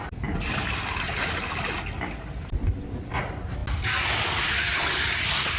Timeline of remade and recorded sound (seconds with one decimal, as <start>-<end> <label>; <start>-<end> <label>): 0.0-5.6 recorded